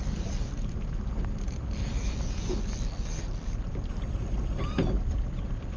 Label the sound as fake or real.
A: fake